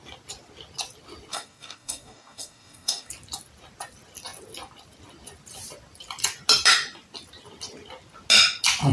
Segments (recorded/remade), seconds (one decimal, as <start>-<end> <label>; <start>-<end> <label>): 0.0-1.3 recorded; 1.3-3.1 remade; 3.1-8.9 recorded